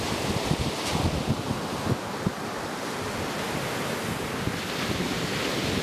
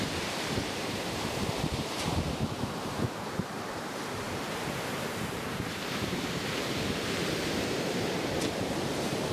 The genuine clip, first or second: first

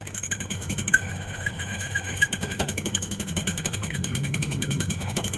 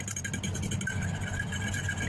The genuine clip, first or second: second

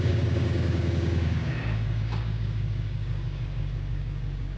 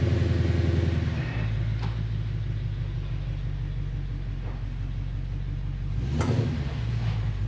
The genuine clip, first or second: second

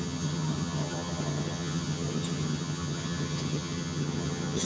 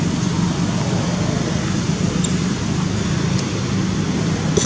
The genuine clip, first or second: second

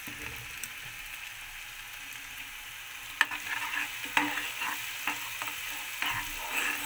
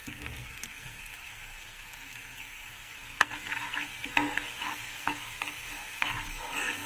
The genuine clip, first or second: first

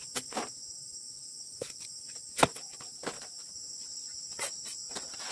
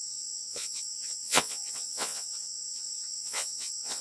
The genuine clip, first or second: first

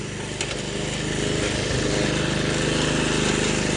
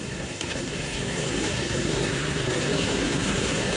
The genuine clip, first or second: first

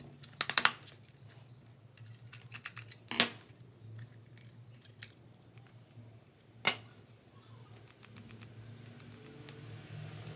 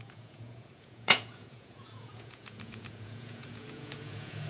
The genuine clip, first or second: first